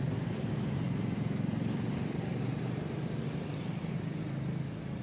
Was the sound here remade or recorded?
recorded